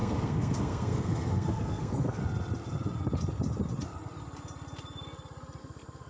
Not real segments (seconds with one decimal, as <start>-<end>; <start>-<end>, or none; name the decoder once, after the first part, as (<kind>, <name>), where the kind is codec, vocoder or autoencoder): 0.0-2.2 (codec, SNAC); 5.6-6.1